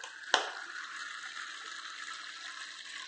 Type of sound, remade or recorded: recorded